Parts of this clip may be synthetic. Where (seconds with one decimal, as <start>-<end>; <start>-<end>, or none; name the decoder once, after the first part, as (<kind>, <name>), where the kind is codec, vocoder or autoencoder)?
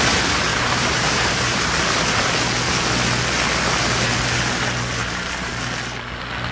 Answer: 0.5-1.8 (vocoder, BigVGAN v2); 5.0-5.5